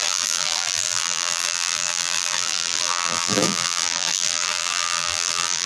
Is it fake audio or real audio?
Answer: fake